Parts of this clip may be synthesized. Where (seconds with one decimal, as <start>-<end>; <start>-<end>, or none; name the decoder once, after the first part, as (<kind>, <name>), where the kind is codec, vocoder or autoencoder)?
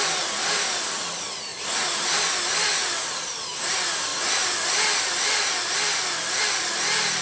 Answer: 0.0-1.5 (vocoder, BigVGAN v2); 3.1-4.1; 6.4-7.2